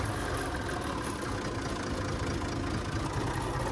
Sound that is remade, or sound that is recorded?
recorded